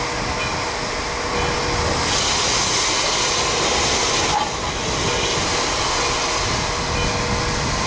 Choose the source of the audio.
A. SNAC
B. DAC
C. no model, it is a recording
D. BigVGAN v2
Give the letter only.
C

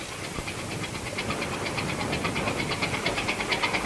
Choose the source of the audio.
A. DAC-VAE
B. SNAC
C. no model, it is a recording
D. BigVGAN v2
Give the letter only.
C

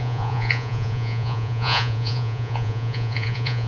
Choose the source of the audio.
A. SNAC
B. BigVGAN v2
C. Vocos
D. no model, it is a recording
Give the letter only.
C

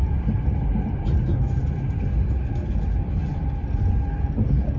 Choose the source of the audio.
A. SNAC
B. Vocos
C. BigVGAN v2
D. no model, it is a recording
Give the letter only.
D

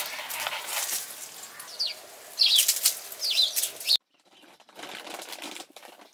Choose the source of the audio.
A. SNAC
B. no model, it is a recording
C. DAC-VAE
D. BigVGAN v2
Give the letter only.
B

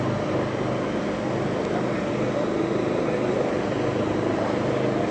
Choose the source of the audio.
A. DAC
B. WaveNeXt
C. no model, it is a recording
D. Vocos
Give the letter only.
C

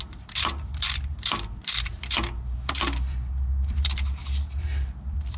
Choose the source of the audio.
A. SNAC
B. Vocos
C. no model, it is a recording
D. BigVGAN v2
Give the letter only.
D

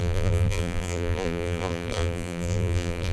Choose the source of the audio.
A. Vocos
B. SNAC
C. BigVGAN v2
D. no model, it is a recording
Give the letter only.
C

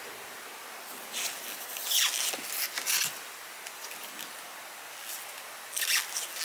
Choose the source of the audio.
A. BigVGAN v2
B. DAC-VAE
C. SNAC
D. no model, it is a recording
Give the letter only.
D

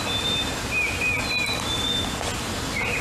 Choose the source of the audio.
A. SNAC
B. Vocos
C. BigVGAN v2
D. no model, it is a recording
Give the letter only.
D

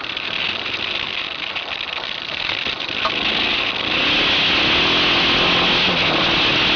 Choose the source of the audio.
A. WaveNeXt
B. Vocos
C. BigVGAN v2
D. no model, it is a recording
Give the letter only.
D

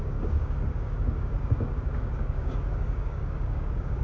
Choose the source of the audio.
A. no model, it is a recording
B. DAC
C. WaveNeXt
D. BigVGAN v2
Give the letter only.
B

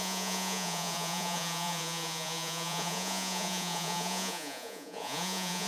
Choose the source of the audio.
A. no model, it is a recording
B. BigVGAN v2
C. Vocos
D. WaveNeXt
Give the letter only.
C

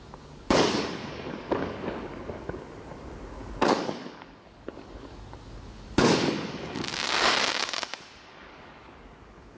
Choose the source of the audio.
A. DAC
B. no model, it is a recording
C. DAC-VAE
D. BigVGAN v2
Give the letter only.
A